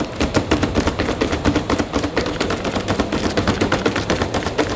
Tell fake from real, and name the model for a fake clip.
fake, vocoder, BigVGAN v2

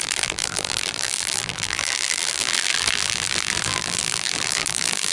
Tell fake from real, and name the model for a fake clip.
fake, vocoder, BigVGAN v2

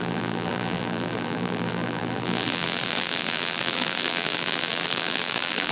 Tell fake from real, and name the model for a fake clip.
fake, vocoder, BigVGAN v2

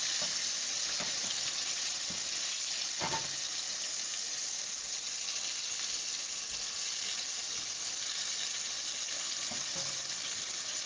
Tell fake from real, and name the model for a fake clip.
real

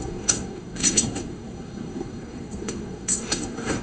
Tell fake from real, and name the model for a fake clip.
fake, codec, SNAC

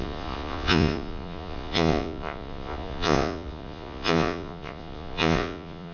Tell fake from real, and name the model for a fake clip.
fake, vocoder, Vocos